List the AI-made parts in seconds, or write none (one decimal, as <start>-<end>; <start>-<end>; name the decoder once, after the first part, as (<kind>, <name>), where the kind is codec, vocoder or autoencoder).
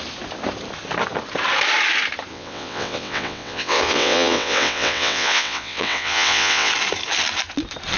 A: 2.3-6.7 (vocoder, WaveNeXt)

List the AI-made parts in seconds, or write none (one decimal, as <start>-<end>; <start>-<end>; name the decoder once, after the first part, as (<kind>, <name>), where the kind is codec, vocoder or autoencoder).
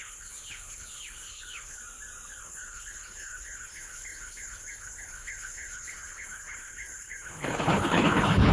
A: 0.0-1.8 (codec, HILCodec); 2.4-8.5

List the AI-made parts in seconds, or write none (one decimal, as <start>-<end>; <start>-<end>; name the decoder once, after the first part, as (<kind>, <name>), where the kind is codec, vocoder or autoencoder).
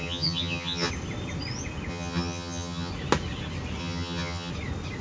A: 0.0-0.9 (vocoder, HiFi-GAN); 1.9-2.9; 3.8-4.5